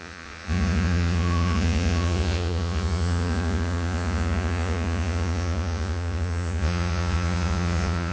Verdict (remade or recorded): remade